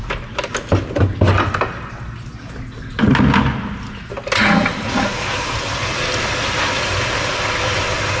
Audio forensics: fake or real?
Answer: real